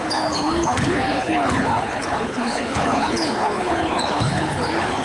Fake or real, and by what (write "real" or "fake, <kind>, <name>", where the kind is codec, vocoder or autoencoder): fake, codec, HILCodec